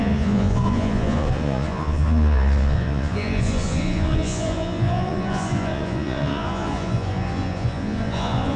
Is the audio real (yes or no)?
no